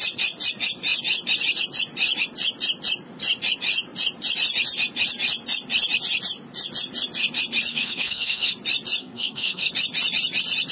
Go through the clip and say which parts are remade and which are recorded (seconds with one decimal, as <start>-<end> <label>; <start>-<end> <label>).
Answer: 0.0-7.7 recorded; 7.7-8.5 remade; 8.5-9.0 recorded; 9.0-9.7 remade; 9.7-10.7 recorded